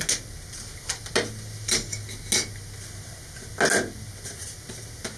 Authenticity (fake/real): real